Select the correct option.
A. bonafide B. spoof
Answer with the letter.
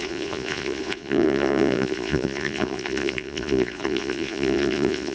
B